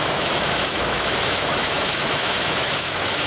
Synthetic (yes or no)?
yes